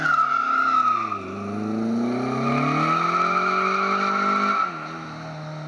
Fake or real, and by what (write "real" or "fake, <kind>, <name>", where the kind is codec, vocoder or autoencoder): real